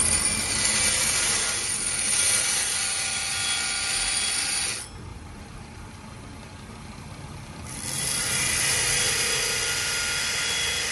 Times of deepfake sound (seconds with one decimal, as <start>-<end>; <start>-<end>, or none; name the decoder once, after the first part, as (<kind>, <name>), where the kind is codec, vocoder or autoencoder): 5.1-9.1 (vocoder, BigVGAN v2)